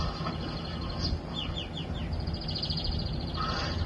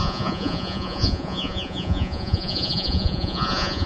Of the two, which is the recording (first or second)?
first